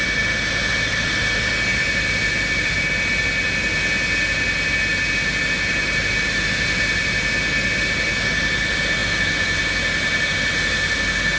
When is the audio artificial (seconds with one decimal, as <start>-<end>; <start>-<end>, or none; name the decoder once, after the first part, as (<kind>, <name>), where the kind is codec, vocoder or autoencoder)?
1.7-2.8 (vocoder, BigVGAN v2)

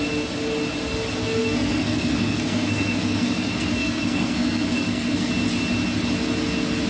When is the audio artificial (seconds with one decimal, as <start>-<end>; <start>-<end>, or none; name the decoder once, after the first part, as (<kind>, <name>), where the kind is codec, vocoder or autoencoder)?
1.2-5.3 (codec, SNAC)

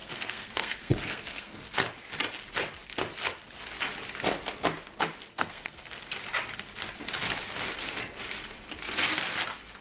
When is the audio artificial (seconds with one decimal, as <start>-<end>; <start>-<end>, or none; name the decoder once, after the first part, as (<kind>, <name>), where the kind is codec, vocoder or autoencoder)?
0.0-1.6 (codec, SNAC); 5.3-6.1

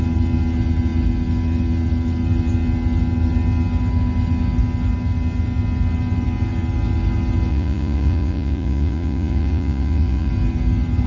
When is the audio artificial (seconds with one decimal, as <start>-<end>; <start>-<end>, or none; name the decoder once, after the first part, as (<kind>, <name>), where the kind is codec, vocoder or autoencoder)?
7.5-10.3 (vocoder, Vocos)

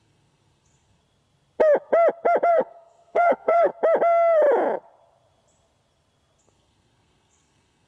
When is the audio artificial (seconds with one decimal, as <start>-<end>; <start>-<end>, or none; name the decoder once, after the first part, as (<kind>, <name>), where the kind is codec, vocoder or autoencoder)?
0.0-1.0 (codec, SNAC); 2.5-3.7; 6.4-7.9

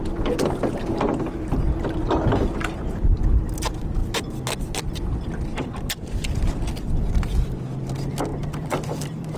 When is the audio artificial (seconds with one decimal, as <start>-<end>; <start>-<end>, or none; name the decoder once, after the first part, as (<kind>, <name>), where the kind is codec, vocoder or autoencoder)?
8.3-9.4 (vocoder, BigVGAN v2)

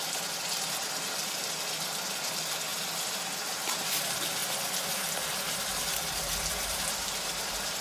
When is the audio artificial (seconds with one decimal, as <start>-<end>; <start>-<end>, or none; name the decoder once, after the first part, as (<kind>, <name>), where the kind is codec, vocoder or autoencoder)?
none